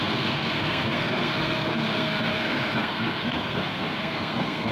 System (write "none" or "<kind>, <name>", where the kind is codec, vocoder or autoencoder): codec, SNAC